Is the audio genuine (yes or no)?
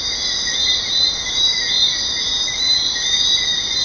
yes